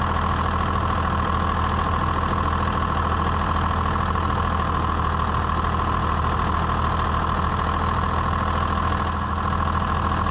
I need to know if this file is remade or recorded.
recorded